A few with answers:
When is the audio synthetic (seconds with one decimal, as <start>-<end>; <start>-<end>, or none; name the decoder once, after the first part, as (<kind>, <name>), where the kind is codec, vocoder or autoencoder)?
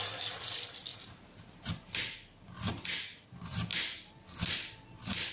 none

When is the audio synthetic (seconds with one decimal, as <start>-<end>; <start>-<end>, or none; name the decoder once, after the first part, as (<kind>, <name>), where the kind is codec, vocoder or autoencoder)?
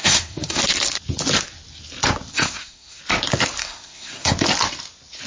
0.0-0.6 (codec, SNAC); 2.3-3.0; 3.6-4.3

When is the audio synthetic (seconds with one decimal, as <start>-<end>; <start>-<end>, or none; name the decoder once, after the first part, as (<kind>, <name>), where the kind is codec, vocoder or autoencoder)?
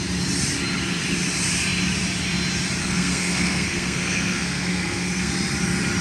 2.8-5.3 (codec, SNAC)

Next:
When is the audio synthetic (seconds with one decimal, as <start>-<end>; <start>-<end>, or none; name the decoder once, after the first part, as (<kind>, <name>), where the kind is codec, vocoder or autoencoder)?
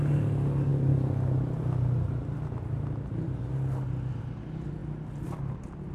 none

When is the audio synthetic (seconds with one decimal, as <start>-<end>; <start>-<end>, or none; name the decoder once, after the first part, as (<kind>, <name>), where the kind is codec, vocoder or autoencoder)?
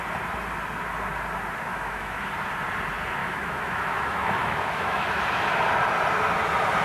1.7-2.3 (autoencoder, DAC-VAE); 3.2-5.2